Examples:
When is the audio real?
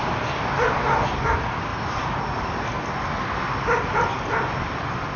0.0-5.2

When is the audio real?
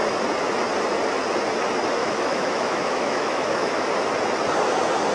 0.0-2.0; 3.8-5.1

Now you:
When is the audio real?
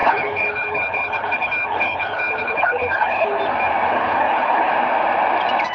3.4-3.9; 4.7-5.7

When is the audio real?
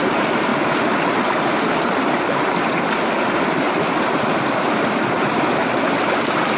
0.0-6.6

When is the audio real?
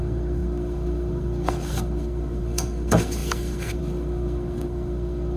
none